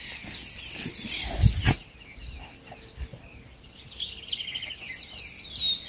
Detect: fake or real real